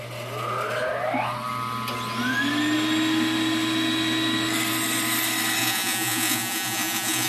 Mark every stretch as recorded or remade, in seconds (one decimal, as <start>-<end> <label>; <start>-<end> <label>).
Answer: 0.0-5.6 recorded; 5.6-7.3 remade